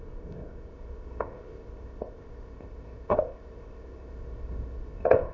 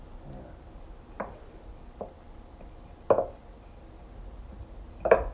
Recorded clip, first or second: second